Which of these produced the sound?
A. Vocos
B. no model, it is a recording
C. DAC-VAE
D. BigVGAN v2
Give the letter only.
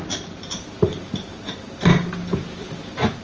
D